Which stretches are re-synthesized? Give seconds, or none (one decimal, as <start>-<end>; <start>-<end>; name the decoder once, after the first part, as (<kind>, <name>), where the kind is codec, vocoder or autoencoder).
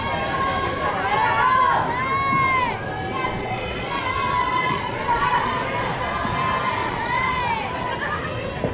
3.4-4.0 (vocoder, Vocos); 4.4-5.5; 6.8-7.4